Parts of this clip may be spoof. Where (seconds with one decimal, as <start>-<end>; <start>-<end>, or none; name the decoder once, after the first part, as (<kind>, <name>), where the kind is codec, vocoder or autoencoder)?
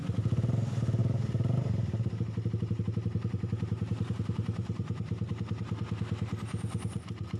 1.0-5.3 (vocoder, BigVGAN v2)